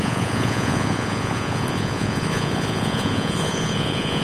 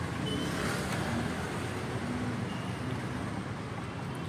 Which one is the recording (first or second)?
second